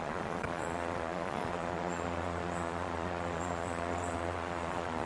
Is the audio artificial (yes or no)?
yes